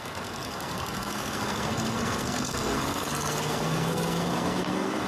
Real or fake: fake